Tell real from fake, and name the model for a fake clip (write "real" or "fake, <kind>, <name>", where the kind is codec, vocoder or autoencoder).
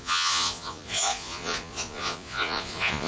fake, vocoder, Vocos